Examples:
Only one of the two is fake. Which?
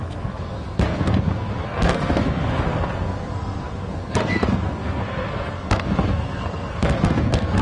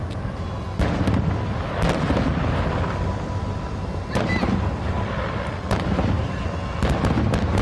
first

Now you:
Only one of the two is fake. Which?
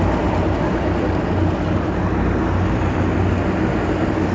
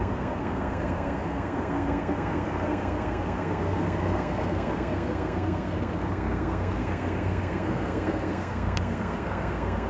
second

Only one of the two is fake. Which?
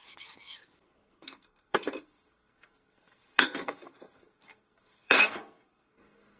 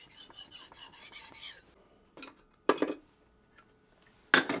first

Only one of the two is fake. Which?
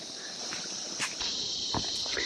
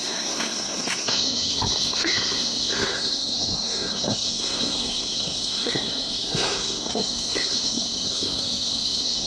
second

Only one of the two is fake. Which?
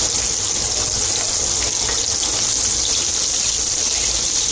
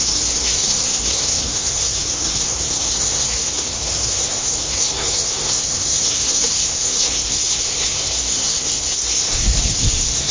second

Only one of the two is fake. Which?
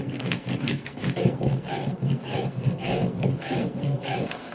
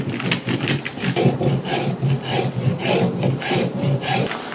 first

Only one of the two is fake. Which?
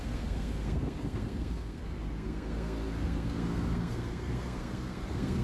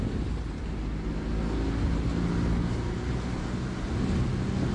first